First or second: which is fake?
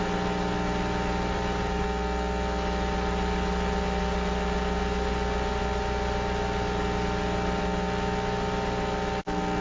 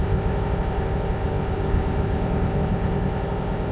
second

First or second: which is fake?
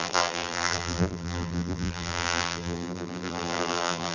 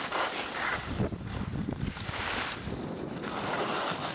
first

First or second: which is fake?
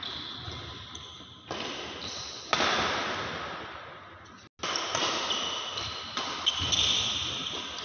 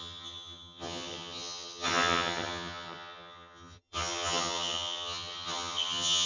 second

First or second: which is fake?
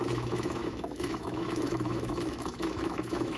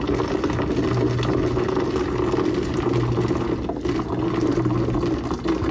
first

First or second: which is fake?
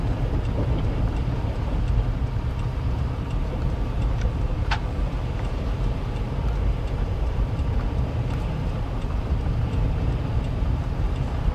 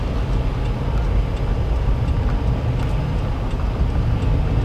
first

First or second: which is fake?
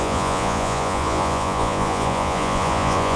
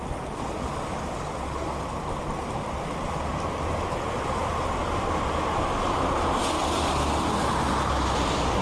first